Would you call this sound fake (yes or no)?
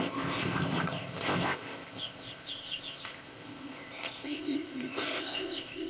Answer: yes